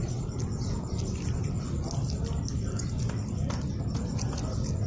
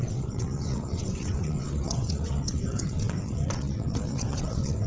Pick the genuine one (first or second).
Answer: first